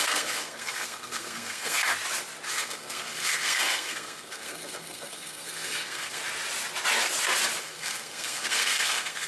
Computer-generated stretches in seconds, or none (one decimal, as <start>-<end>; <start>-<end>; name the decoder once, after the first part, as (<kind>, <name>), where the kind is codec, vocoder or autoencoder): 0.0-1.9 (codec, SNAC); 2.5-6.2; 7.6-9.3